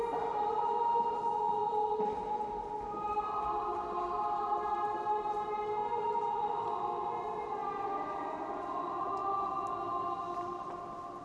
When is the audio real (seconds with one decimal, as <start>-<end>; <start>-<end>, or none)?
0.0-11.2